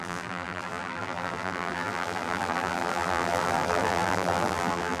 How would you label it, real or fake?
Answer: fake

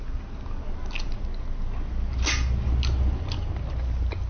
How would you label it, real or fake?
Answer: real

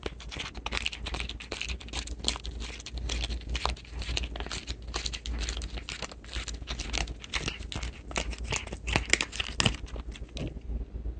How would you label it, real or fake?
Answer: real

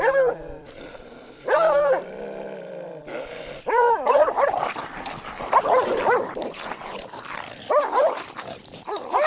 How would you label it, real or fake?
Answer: fake